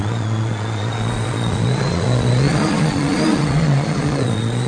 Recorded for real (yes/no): no